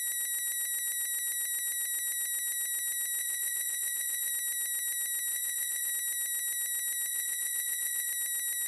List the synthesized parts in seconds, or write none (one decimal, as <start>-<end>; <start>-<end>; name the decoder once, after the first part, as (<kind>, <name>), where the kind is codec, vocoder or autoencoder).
3.2-4.3 (vocoder, Vocos); 5.3-5.9; 7.1-8.1